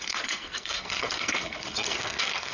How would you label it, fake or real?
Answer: fake